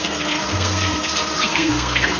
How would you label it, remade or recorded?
remade